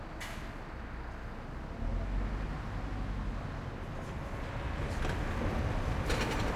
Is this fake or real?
real